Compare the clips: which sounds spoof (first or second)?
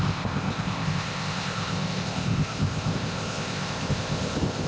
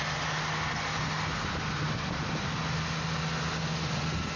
first